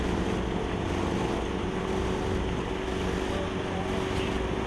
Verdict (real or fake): real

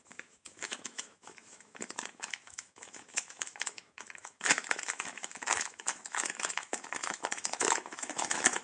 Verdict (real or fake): fake